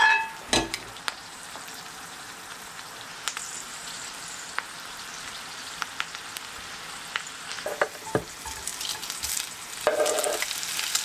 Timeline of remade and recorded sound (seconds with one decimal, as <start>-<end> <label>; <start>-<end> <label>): 0.0-1.2 recorded; 1.2-5.9 remade; 5.9-11.0 recorded